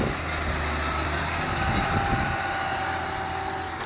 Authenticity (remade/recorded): remade